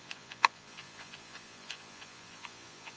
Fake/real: fake